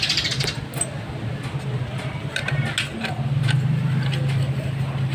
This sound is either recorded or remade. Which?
recorded